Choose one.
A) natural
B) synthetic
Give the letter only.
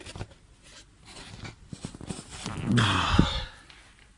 A